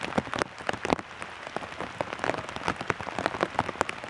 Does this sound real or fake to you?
real